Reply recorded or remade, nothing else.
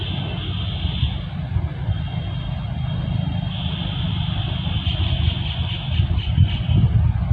recorded